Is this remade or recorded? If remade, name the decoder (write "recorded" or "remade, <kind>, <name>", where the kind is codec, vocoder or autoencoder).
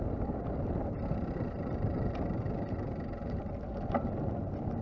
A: recorded